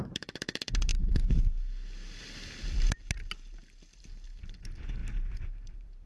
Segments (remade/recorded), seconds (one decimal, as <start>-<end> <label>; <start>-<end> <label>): 0.0-0.9 remade; 0.9-4.6 recorded; 4.6-6.1 remade